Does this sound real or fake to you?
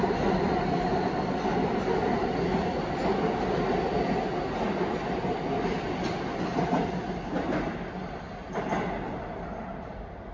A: real